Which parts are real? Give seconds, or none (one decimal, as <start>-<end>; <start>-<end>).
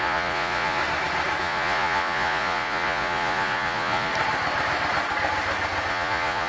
0.8-1.4; 4.1-5.9